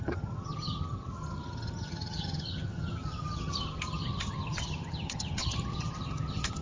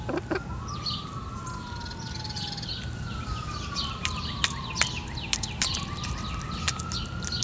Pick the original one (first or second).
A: second